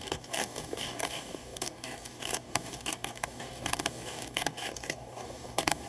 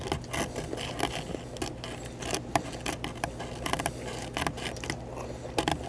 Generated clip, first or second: first